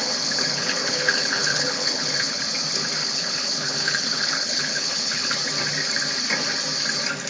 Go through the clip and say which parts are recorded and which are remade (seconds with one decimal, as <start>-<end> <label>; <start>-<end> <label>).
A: 0.0-2.4 remade; 2.4-3.0 recorded; 3.0-5.3 remade; 5.3-7.3 recorded